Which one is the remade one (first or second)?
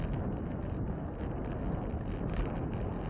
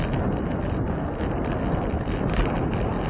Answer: second